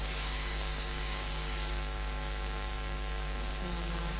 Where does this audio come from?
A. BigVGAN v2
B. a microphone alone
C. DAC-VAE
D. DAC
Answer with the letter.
D